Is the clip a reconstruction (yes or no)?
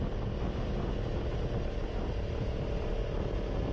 no